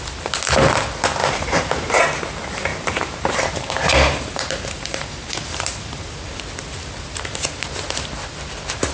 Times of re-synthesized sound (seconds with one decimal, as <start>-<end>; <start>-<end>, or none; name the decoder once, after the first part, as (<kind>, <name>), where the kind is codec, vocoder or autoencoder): 1.2-2.0 (vocoder, BigVGAN v2); 2.7-6.4